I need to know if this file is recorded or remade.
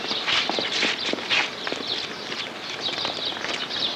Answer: recorded